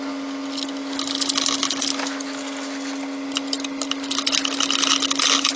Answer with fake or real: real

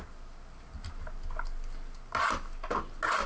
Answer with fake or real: real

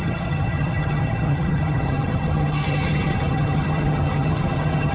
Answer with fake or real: fake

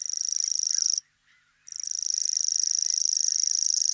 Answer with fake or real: real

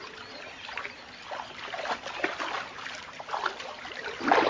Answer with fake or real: real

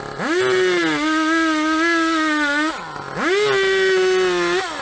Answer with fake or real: real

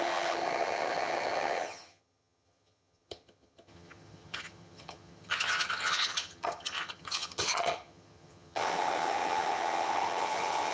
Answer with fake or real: fake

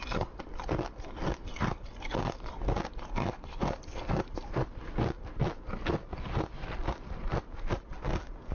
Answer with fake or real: real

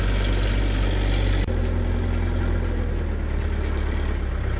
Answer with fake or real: real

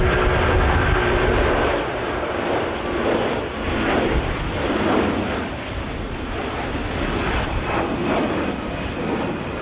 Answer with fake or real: real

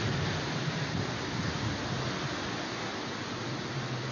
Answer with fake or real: real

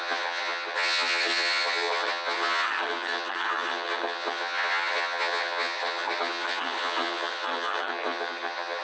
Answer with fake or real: fake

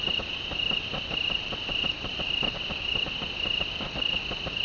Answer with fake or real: real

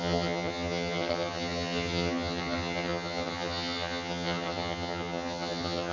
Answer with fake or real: fake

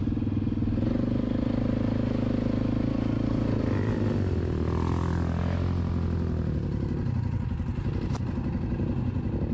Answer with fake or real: real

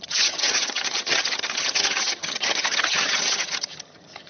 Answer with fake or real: fake